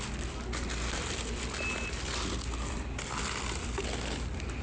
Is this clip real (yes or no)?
yes